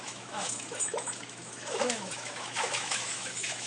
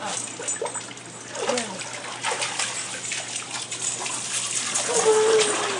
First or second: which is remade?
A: first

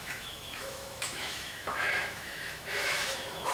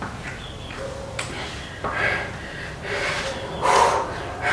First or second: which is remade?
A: first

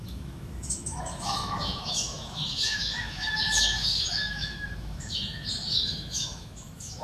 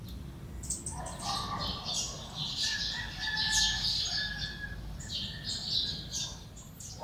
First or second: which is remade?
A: first